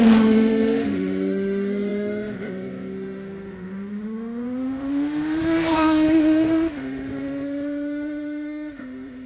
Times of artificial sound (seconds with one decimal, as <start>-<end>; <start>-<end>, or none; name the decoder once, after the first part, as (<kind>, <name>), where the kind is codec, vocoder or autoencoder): 0.0-9.3 (autoencoder, DAC-VAE)